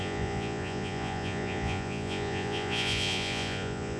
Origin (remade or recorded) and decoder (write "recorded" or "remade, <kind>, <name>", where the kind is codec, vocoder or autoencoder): remade, vocoder, Vocos